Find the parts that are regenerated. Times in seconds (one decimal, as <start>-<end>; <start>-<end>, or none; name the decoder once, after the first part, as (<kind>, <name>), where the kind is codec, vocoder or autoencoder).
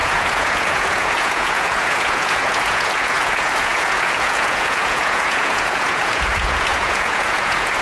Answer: 0.0-7.8 (vocoder, Vocos)